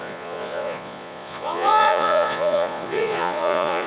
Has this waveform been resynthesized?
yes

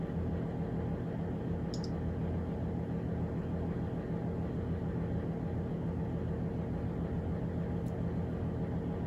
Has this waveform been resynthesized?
no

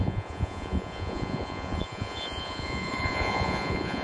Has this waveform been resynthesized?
yes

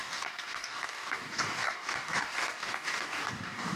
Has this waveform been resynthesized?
yes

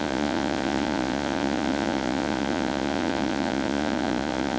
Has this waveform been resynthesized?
yes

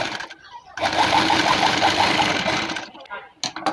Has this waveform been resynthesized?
no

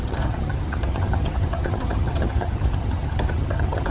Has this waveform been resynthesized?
yes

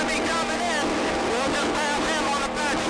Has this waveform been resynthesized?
no